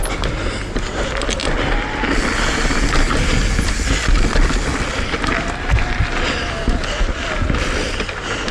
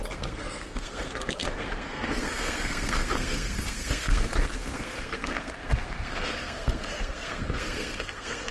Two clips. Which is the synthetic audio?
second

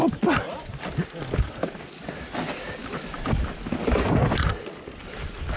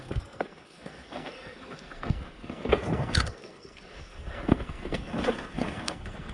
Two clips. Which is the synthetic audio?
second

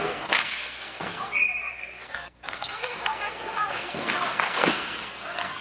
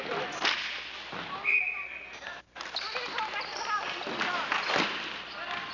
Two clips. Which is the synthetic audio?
first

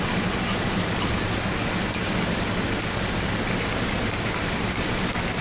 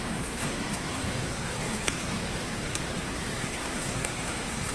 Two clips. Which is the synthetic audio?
second